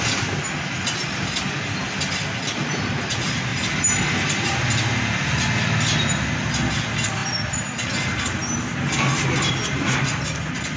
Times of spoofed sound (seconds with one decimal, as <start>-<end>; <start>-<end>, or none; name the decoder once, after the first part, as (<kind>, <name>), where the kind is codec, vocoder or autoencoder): none